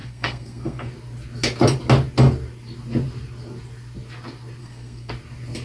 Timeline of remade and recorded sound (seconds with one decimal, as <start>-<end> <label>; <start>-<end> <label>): 0.0-0.9 remade; 0.9-4.6 recorded; 4.6-5.1 remade; 5.1-5.6 recorded